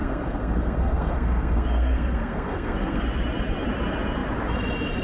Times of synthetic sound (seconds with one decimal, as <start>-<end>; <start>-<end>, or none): 0.0-3.0